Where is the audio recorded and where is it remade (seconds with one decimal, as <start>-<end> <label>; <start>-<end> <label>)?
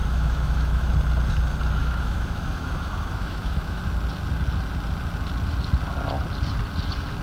0.0-0.9 remade; 0.9-1.8 recorded; 1.8-3.8 remade; 3.8-7.2 recorded